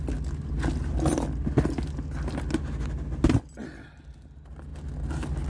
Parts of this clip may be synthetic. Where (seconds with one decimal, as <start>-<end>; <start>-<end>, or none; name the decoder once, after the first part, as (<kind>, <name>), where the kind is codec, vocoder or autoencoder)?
none